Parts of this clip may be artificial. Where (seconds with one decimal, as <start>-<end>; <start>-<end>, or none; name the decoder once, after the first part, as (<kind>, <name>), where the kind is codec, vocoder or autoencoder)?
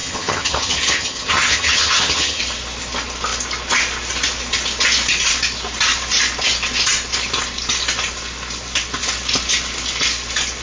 0.0-2.4 (vocoder, HiFi-GAN)